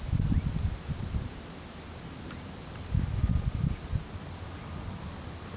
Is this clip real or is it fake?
real